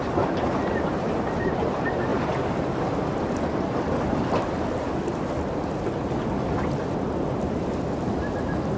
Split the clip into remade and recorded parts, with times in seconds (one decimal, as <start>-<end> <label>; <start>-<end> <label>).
0.0-8.8 recorded

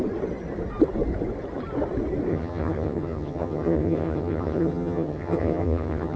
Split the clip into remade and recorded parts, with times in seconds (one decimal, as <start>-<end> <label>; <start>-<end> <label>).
0.0-2.3 recorded; 2.3-6.2 remade

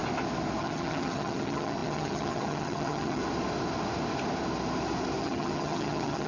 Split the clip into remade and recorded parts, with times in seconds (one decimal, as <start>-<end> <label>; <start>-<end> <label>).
0.0-0.6 recorded; 0.6-3.2 remade; 3.2-5.2 recorded; 5.2-6.3 remade

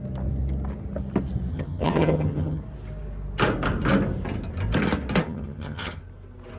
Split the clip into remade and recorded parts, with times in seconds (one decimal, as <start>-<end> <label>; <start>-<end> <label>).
0.0-1.5 recorded; 1.5-2.6 remade; 2.6-5.2 recorded; 5.2-6.0 remade; 6.0-6.6 recorded

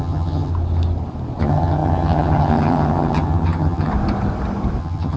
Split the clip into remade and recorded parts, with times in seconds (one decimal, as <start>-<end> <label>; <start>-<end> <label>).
0.0-0.5 remade; 0.5-1.4 recorded; 1.4-3.9 remade; 3.9-4.8 recorded; 4.8-5.2 remade

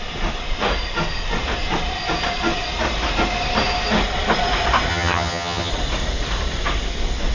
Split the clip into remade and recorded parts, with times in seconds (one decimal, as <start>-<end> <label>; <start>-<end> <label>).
0.0-4.9 recorded; 4.9-5.7 remade; 5.7-7.3 recorded

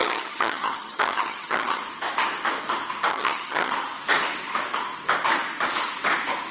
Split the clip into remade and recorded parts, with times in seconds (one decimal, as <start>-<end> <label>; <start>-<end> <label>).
0.0-1.8 remade; 1.8-3.1 recorded; 3.1-3.7 remade; 3.7-6.5 recorded